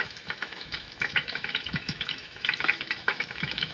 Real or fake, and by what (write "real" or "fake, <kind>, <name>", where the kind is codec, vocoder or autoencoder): fake, autoencoder, DAC-VAE